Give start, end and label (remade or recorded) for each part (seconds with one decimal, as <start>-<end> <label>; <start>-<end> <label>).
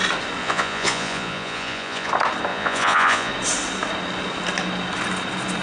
0.0-0.4 recorded; 0.4-2.1 remade; 2.1-2.5 recorded; 2.5-3.3 remade; 3.3-5.6 recorded